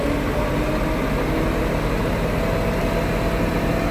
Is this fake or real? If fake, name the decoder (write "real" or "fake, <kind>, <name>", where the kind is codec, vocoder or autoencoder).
real